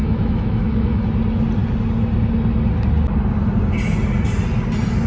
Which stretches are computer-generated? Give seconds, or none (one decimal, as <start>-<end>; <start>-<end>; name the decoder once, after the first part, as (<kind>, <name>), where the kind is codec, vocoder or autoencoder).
0.0-1.0 (autoencoder, DAC-VAE)